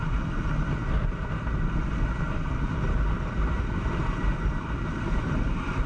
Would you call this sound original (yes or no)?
yes